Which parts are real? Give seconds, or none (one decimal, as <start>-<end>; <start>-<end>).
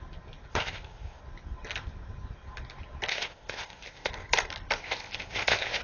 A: 0.0-0.5; 1.2-3.1; 4.1-4.8